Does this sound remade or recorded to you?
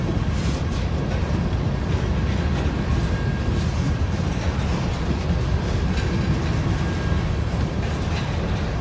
recorded